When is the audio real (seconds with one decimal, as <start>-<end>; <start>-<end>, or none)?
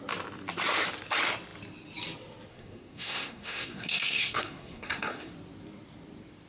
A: 0.0-2.5; 5.3-6.5